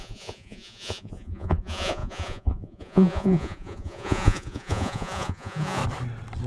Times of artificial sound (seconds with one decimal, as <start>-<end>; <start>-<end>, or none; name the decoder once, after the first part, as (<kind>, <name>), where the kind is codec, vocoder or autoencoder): 0.0-5.8 (vocoder, Vocos)